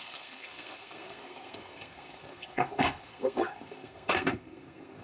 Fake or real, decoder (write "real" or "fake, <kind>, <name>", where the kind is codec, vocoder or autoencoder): fake, codec, SNAC